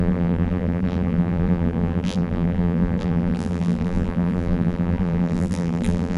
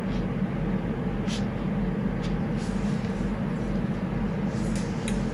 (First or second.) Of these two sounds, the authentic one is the second